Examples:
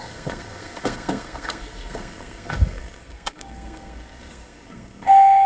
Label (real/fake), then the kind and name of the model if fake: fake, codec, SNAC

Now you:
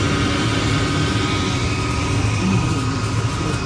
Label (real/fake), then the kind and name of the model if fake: real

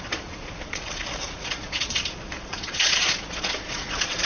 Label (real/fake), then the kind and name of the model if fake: fake, vocoder, Vocos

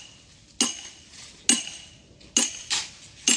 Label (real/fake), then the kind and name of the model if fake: real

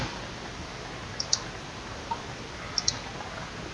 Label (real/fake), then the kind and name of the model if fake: real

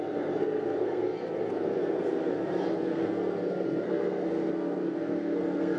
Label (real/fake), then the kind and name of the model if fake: fake, codec, SNAC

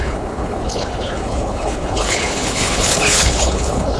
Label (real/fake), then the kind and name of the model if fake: fake, codec, HILCodec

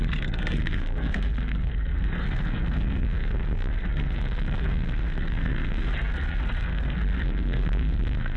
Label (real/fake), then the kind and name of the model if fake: fake, codec, SNAC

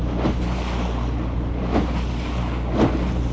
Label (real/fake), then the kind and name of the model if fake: real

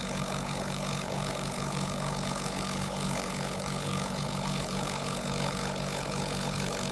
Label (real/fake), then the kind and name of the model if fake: fake, codec, HILCodec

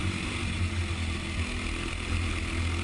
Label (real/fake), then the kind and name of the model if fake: real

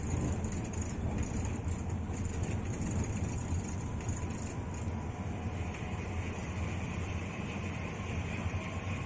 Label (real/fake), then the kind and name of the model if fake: fake, vocoder, BigVGAN v2